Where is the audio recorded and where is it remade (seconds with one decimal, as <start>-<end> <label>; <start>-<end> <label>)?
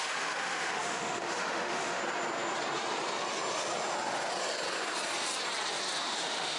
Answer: 0.0-2.0 remade; 2.0-6.0 recorded; 6.0-6.6 remade